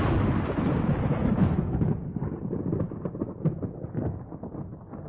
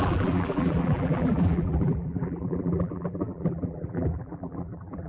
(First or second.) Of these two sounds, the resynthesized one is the second